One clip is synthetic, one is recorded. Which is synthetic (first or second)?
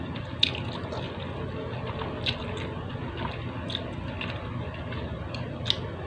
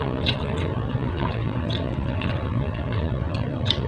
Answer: second